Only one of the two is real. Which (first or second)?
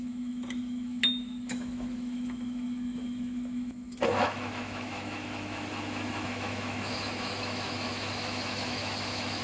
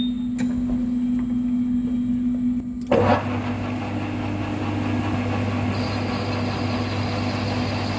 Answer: second